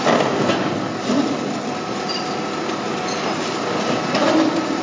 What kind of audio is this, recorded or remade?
recorded